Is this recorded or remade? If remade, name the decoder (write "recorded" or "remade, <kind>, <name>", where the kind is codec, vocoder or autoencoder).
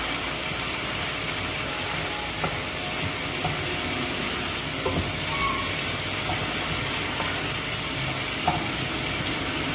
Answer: recorded